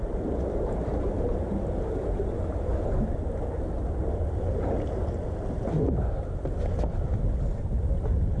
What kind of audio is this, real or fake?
real